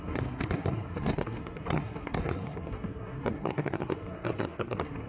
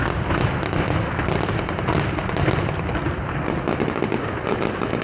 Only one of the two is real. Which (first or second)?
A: second